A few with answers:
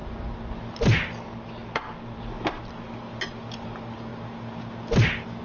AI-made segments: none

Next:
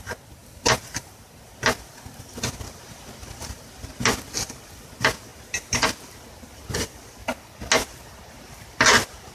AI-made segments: none

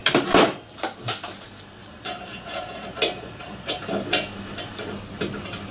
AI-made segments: 1.8-3.8 (vocoder, Vocos)